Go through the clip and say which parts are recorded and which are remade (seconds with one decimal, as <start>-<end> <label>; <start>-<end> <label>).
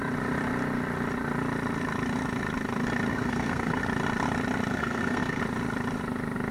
0.0-3.1 recorded; 3.1-3.8 remade; 3.8-4.7 recorded; 4.7-5.4 remade; 5.4-6.5 recorded